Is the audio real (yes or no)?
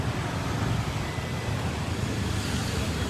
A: no